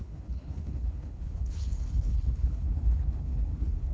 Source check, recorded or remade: remade